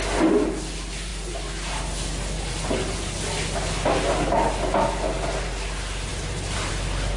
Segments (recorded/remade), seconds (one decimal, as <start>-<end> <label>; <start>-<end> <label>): 0.0-7.2 recorded